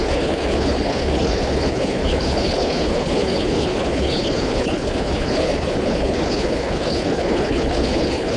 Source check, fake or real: fake